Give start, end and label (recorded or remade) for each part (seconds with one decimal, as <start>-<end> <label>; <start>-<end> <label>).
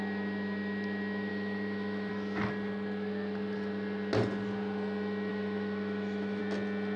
0.0-1.3 recorded; 1.3-2.1 remade; 2.1-5.3 recorded; 5.3-6.4 remade; 6.4-7.0 recorded